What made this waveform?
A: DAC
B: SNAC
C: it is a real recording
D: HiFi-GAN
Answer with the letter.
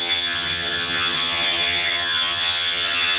D